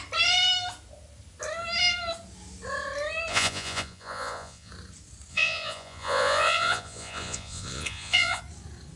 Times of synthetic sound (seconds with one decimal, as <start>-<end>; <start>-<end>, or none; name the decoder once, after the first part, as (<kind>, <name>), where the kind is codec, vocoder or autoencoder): 3.3-4.7 (vocoder, Vocos); 5.3-8.4